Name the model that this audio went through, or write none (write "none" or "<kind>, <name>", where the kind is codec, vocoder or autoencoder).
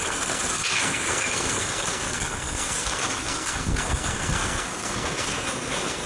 codec, SNAC